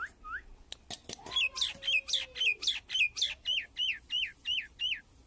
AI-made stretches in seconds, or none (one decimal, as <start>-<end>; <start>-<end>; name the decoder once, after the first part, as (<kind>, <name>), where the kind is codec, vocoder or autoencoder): none